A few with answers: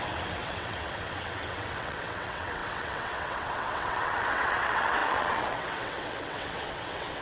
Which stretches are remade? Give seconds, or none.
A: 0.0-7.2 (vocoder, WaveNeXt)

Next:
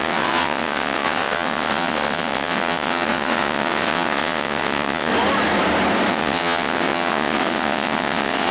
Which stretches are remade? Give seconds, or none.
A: 0.0-5.1 (vocoder, WaveNeXt); 6.1-8.5

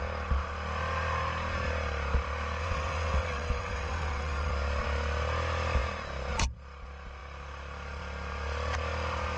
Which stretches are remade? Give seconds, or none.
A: 2.6-4.5 (vocoder, WaveNeXt)

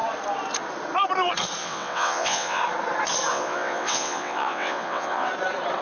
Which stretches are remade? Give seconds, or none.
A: 1.6-2.6 (vocoder, WaveNeXt); 3.3-5.3